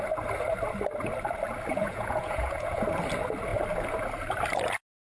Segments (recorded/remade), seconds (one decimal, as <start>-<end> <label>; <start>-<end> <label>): 0.0-1.7 recorded; 1.7-2.8 remade; 2.8-5.1 recorded